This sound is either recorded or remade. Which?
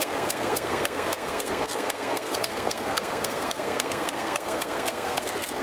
remade